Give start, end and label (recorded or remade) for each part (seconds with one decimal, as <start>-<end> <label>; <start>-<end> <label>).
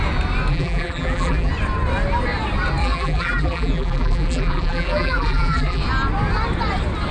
0.0-0.5 recorded; 0.5-1.5 remade; 1.5-2.8 recorded; 2.8-5.8 remade; 5.8-7.1 recorded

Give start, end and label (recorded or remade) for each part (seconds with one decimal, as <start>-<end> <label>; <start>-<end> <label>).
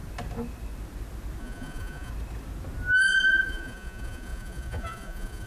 0.0-1.4 recorded; 1.4-2.1 remade; 2.1-3.0 recorded; 3.0-5.5 remade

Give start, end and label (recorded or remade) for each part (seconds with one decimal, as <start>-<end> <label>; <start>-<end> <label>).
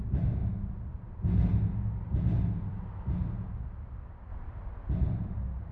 0.0-0.4 remade; 0.4-3.8 recorded; 3.8-4.3 remade; 4.3-4.9 recorded; 4.9-5.7 remade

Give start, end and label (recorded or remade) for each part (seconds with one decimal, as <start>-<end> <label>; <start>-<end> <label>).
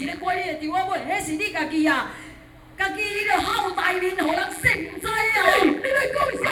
0.0-0.4 remade; 0.4-3.1 recorded; 3.1-6.5 remade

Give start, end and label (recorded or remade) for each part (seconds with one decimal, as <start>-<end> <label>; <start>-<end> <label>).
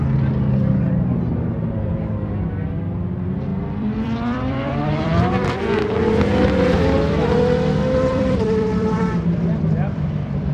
0.0-3.5 recorded; 3.5-5.6 remade; 5.6-8.1 recorded; 8.1-10.5 remade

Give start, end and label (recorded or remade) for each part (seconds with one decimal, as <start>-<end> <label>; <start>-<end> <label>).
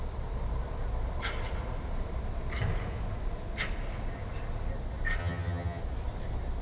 0.0-5.2 recorded; 5.2-5.8 remade; 5.8-6.6 recorded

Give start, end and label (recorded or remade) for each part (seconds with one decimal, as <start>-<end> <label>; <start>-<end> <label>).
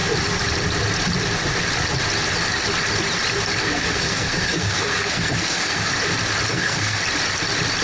0.0-3.6 recorded; 3.6-5.9 remade; 5.9-6.5 recorded; 6.5-7.0 remade; 7.0-7.8 recorded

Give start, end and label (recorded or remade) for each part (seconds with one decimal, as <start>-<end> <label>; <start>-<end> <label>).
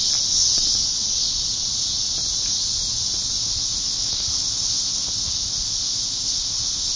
0.0-3.4 recorded; 3.4-7.0 remade